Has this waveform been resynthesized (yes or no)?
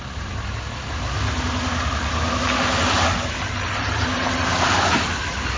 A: no